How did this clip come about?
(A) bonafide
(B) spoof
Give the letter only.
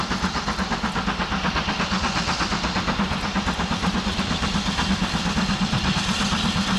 A